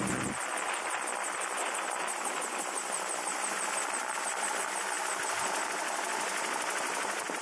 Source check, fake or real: real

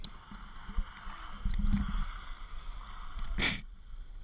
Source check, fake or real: real